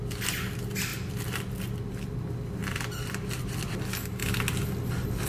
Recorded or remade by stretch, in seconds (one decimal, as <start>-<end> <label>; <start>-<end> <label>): 0.0-5.3 recorded